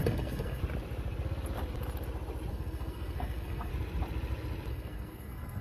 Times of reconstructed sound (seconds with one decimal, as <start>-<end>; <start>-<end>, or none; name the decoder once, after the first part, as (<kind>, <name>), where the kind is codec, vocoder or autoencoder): 0.0-0.6 (codec, SNAC); 2.5-3.7; 4.7-5.6